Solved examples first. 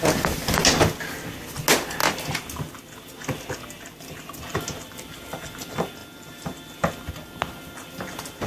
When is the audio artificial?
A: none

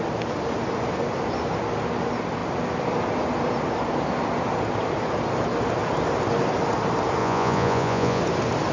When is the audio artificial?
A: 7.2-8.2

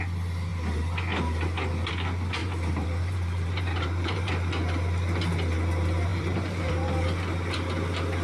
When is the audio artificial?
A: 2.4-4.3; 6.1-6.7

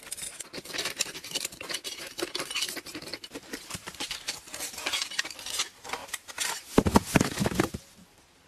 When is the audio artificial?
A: 3.1-5.2; 6.0-6.7

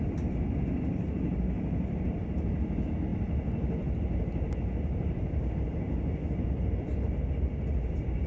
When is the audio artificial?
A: none